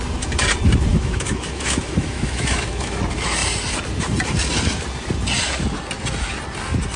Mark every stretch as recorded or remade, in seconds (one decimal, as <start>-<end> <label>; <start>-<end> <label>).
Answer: 0.0-0.9 recorded; 0.9-3.0 remade; 3.0-7.0 recorded

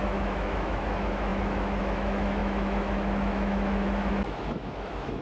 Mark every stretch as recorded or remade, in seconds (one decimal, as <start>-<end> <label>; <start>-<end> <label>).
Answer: 0.0-5.2 remade

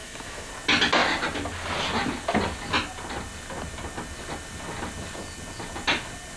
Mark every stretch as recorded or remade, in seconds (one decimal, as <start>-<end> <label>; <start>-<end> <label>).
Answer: 0.0-0.5 remade; 0.5-6.4 recorded

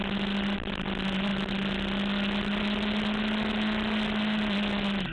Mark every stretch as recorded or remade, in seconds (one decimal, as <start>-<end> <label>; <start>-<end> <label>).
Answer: 0.0-5.1 recorded

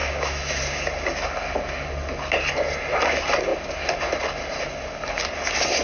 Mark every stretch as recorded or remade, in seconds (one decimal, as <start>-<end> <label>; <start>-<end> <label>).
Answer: 0.0-0.6 remade; 0.6-5.8 recorded

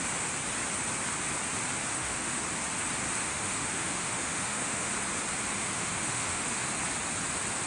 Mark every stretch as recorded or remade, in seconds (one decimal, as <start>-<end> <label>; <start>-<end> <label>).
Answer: 0.0-1.9 recorded; 1.9-2.4 remade; 2.4-3.2 recorded; 3.2-4.9 remade; 4.9-5.6 recorded; 5.6-6.7 remade; 6.7-7.7 recorded

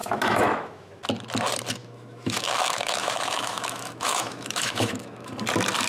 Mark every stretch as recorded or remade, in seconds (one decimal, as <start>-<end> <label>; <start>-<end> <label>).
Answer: 0.0-1.0 remade; 1.0-1.8 recorded; 1.8-5.3 remade; 5.3-5.9 recorded